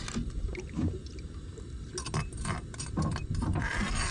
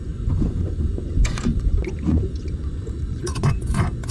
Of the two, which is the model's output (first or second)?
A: second